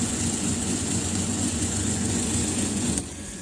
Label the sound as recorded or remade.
remade